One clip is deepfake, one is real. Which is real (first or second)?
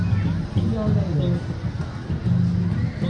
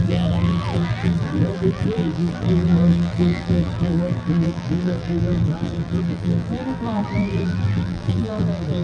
first